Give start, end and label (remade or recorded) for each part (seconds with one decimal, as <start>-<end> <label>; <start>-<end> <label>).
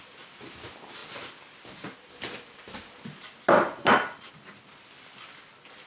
0.0-5.9 recorded